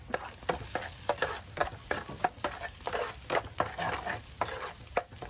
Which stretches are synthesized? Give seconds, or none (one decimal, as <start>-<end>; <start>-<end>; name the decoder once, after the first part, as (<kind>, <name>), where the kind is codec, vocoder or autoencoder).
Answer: none